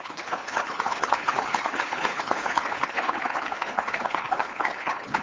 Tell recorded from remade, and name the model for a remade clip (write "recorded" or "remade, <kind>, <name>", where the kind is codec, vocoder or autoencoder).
remade, codec, HILCodec